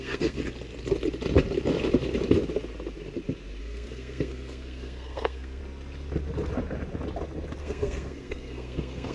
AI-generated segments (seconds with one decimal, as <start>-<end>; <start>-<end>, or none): 0.0-0.4; 3.6-5.6; 7.6-9.1